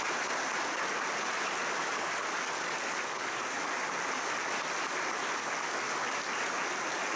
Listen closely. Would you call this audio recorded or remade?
recorded